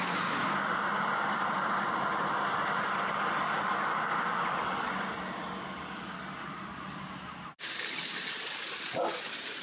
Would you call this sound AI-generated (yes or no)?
no